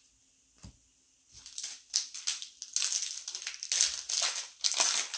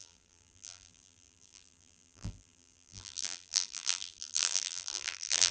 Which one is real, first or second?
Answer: first